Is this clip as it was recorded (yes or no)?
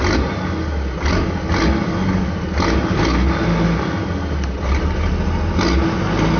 yes